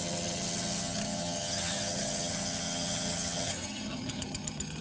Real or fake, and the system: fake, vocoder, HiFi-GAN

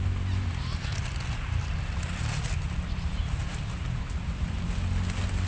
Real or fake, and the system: real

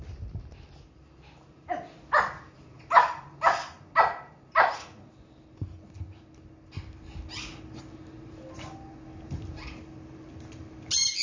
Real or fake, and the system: real